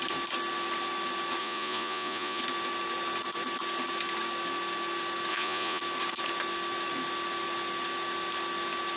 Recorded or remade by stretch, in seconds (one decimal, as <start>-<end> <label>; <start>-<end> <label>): 0.0-1.4 recorded; 1.4-2.4 remade; 2.4-5.3 recorded; 5.3-5.8 remade; 5.8-9.0 recorded